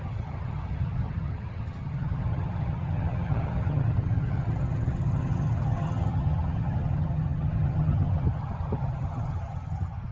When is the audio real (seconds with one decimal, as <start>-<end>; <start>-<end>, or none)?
none